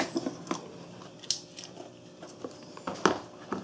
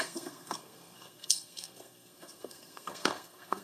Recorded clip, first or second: first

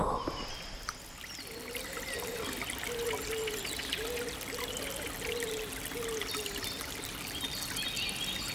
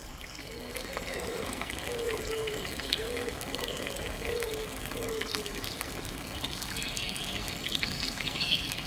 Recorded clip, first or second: first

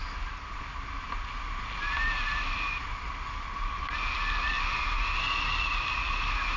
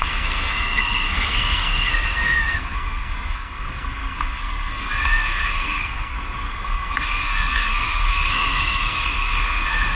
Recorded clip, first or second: first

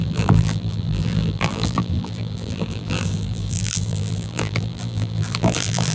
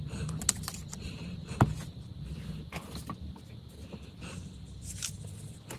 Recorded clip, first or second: second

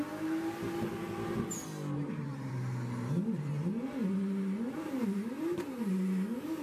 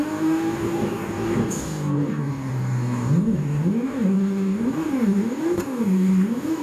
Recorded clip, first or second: first